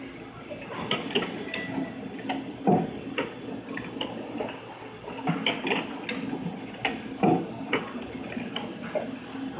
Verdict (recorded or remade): remade